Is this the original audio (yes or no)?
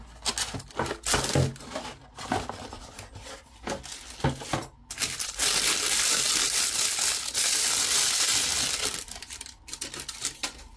yes